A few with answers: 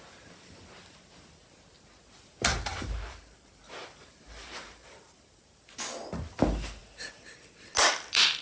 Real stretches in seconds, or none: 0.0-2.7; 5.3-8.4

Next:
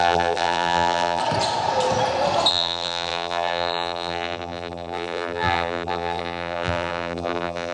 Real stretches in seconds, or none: 1.2-2.5

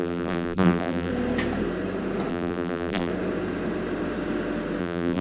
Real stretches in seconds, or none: 1.1-2.3; 3.1-4.8

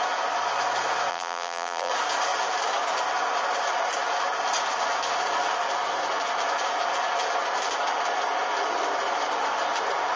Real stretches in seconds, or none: 0.0-1.1; 1.9-10.2

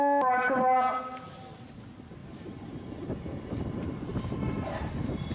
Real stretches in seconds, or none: 0.0-2.2; 3.6-5.3